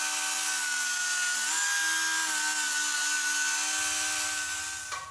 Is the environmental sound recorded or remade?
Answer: recorded